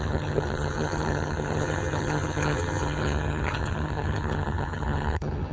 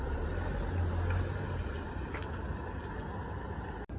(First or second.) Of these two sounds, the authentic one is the second